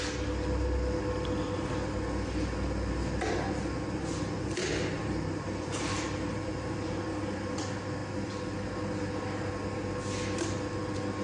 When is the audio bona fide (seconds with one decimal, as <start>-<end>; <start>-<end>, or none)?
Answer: 0.0-5.0; 7.6-11.2